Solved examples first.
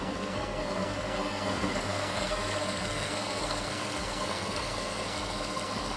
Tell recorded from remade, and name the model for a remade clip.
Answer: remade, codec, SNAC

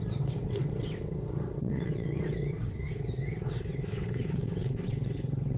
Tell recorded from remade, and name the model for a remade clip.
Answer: remade, vocoder, WaveNeXt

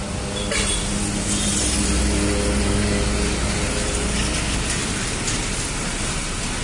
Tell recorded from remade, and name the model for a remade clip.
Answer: recorded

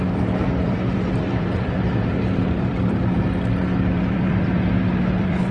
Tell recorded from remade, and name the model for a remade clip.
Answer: remade, vocoder, BigVGAN v2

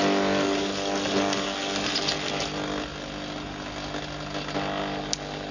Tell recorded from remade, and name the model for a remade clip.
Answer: recorded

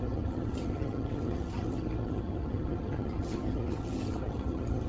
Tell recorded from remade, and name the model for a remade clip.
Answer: remade, vocoder, HiFi-GAN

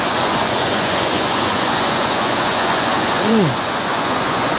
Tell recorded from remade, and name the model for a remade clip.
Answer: remade, vocoder, Vocos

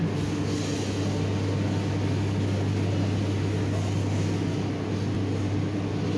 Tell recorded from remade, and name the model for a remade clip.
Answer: recorded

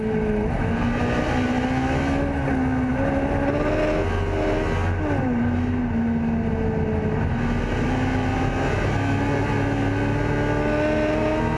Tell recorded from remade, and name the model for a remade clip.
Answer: recorded